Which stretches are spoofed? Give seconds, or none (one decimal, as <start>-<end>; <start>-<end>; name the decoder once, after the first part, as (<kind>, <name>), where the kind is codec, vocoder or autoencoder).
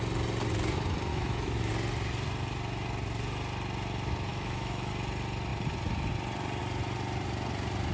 1.1-1.7 (autoencoder, DAC-VAE); 4.3-4.9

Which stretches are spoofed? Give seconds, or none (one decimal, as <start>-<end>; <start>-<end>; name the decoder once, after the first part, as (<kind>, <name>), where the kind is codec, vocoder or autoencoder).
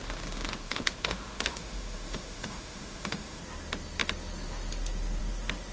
0.0-3.4 (autoencoder, DAC-VAE)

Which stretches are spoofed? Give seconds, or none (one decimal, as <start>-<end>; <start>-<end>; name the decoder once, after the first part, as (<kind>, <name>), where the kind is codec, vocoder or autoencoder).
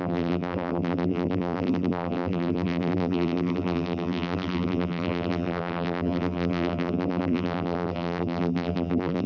0.0-9.3 (vocoder, BigVGAN v2)